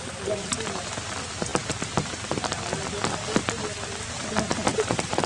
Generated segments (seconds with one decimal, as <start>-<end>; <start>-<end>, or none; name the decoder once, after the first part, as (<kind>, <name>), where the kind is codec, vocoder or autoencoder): 4.7-5.3 (vocoder, BigVGAN v2)